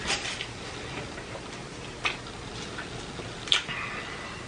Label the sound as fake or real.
real